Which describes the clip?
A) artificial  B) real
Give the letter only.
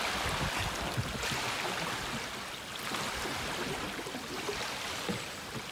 B